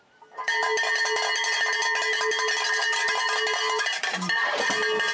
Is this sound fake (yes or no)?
no